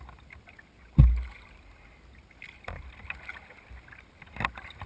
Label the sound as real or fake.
real